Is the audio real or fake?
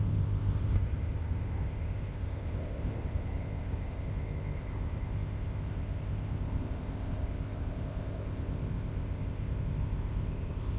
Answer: fake